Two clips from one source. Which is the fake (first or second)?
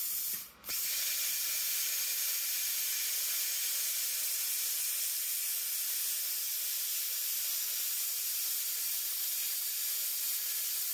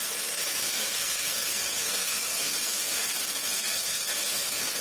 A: second